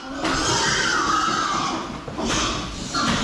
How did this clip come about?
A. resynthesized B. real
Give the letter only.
B